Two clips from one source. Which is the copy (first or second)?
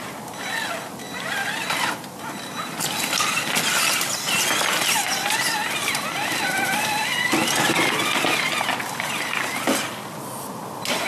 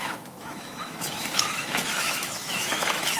second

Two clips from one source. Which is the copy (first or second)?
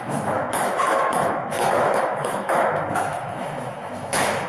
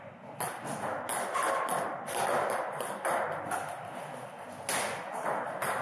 first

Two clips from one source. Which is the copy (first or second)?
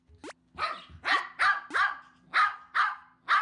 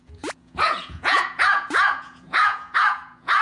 second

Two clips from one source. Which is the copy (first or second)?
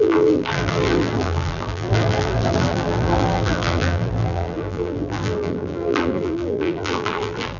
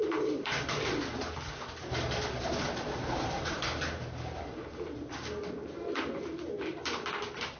first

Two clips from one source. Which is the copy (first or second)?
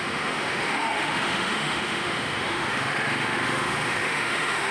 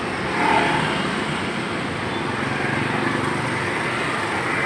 first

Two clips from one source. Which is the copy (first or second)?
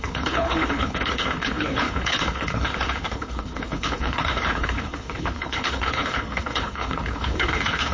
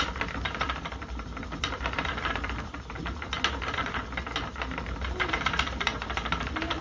first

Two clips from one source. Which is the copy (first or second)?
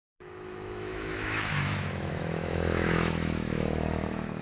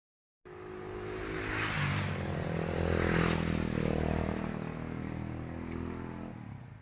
first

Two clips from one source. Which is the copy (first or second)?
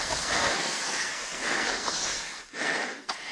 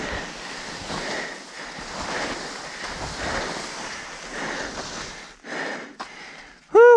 first